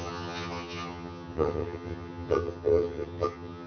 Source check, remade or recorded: remade